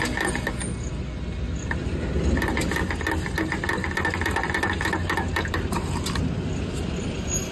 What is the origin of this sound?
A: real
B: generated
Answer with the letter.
A